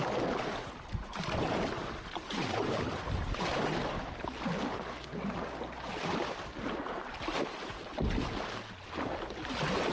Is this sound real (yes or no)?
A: yes